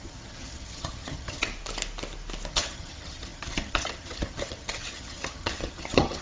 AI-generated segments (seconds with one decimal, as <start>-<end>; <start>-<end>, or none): 0.0-1.5; 2.5-6.2